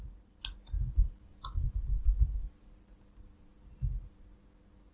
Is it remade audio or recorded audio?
recorded